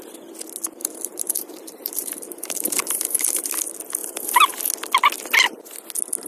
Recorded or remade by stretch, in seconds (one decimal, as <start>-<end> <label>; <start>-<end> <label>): 0.0-0.8 recorded; 0.8-3.5 remade; 3.5-4.0 recorded; 4.0-4.6 remade; 4.6-6.3 recorded